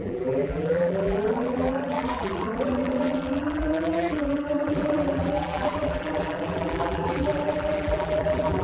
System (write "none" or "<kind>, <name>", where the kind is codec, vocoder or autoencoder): vocoder, BigVGAN v2